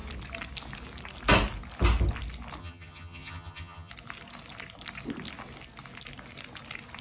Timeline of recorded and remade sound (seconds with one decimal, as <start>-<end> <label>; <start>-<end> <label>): 0.0-2.6 recorded; 2.6-3.9 remade; 3.9-7.0 recorded